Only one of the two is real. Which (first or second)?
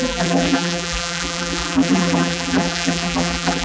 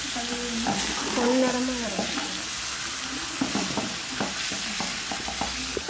second